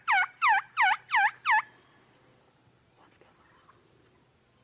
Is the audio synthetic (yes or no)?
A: no